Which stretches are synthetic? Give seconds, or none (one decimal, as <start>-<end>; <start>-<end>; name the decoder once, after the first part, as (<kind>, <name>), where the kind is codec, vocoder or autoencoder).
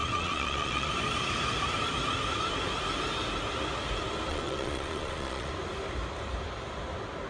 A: 0.0-0.9 (vocoder, Vocos); 4.3-5.5